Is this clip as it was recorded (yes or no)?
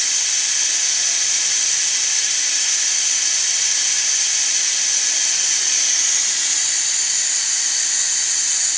yes